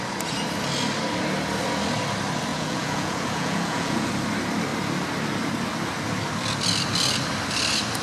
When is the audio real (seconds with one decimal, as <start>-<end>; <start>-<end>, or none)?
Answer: 0.0-2.5; 4.1-8.0